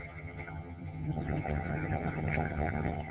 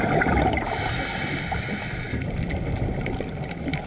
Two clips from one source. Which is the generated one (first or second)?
first